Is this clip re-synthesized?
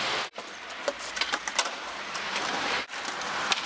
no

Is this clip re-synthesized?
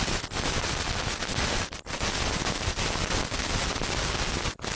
no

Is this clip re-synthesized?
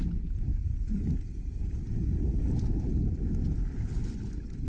no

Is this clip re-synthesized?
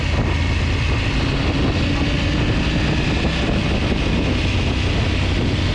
no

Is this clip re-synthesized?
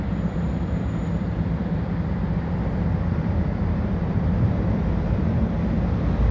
yes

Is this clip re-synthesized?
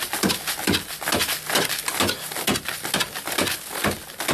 no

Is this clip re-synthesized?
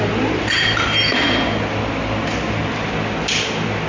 no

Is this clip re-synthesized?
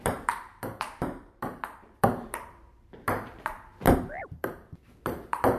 yes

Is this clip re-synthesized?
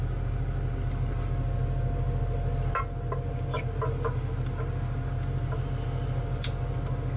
no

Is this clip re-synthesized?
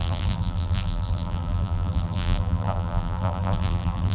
yes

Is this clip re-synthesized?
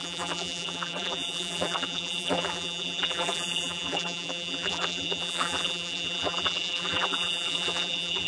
yes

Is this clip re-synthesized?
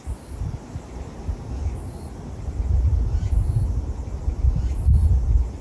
no